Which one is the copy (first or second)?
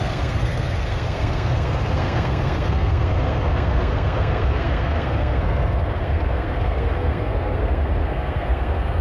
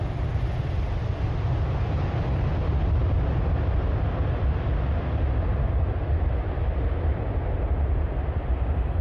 first